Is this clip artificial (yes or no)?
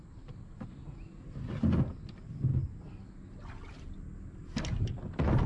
no